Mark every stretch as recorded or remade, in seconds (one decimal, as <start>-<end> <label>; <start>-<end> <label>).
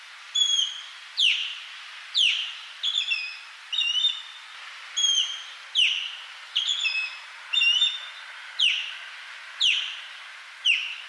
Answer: 0.0-11.1 recorded